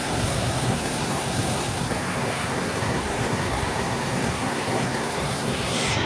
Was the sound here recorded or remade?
remade